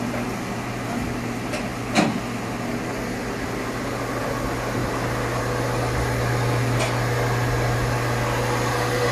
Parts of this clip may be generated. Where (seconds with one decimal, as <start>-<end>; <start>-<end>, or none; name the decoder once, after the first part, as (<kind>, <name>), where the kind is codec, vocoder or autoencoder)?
4.8-5.4 (vocoder, BigVGAN v2)